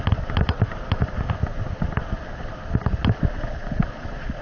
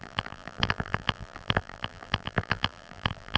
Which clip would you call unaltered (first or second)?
first